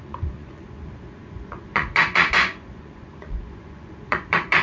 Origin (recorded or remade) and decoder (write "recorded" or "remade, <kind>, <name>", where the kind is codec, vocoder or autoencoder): remade, vocoder, Vocos